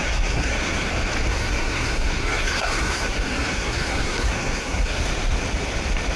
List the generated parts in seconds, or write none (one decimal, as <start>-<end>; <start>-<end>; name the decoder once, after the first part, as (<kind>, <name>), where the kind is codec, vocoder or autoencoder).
0.0-0.9 (codec, SNAC); 1.3-5.0